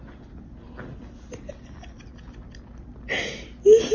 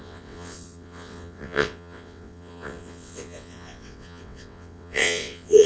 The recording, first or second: first